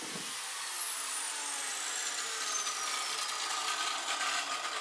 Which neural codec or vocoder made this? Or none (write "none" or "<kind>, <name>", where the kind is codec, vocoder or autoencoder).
none